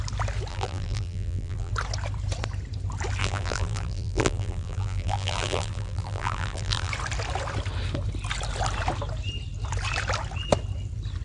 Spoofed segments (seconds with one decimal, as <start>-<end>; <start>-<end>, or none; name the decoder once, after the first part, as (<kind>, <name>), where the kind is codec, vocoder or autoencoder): 0.5-1.7 (vocoder, BigVGAN v2); 3.2-6.9